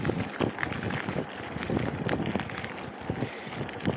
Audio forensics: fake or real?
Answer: real